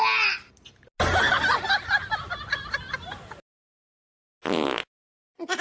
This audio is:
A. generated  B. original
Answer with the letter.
B